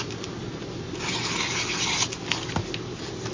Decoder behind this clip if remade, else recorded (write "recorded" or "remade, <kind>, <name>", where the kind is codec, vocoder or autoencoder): recorded